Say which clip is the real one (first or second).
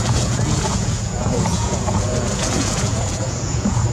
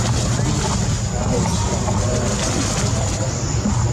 second